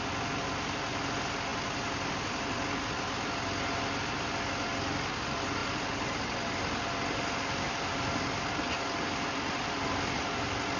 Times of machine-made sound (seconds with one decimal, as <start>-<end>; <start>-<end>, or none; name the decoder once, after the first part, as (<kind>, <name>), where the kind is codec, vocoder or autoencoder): none